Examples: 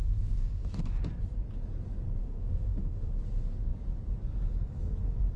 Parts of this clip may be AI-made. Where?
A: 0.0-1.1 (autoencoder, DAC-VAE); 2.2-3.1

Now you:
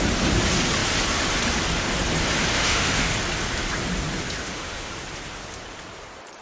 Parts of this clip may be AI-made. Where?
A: 2.5-3.1 (autoencoder, DAC-VAE); 4.4-4.9